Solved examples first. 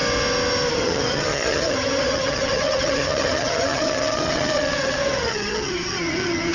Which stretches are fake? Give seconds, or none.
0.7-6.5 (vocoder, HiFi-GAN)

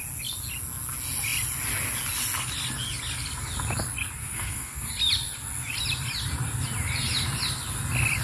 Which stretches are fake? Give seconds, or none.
4.2-4.9 (codec, SNAC)

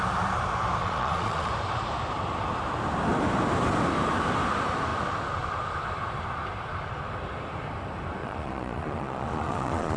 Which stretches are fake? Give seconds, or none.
0.8-1.5 (vocoder, Vocos); 8.2-10.0

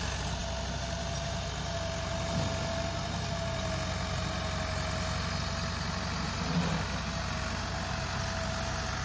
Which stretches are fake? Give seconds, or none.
none

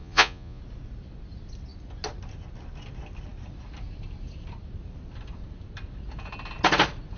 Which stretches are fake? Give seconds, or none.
0.0-0.6 (vocoder, Vocos)

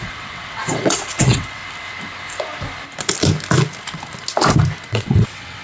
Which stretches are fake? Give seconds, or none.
0.0-1.6 (vocoder, WaveNeXt); 4.9-5.6